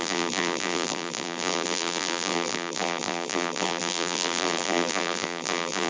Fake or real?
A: fake